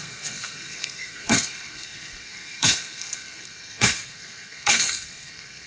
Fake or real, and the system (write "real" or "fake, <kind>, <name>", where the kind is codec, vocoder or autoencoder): fake, codec, SNAC